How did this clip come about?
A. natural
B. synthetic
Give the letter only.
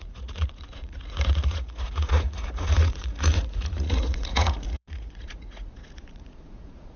B